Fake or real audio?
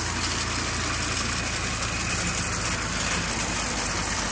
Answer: real